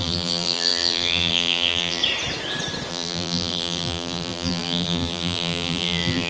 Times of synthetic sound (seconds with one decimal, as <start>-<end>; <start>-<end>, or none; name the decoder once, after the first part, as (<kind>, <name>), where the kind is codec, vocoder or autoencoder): 0.0-2.0 (vocoder, BigVGAN v2); 2.9-6.3